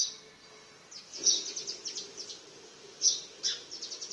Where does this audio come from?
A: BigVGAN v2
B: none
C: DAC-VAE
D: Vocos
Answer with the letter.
B